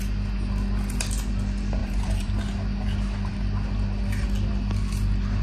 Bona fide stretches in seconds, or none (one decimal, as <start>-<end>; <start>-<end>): 0.0-1.8; 2.4-5.4